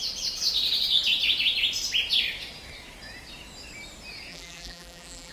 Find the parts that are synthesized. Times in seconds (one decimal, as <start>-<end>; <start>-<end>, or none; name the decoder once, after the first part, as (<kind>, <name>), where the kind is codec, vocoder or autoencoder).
4.3-5.3 (vocoder, BigVGAN v2)